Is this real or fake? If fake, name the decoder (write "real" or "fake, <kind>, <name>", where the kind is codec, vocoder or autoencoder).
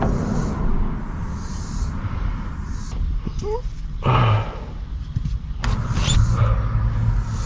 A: real